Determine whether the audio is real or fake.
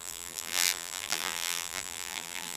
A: fake